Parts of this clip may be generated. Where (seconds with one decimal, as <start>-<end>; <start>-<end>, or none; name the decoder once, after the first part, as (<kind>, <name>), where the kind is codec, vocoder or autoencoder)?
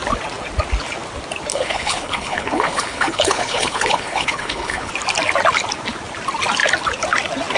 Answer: 1.5-4.9 (codec, HILCodec)